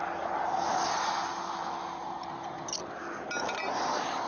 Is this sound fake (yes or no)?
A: no